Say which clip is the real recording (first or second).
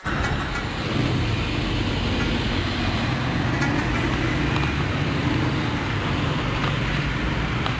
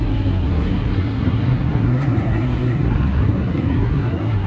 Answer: first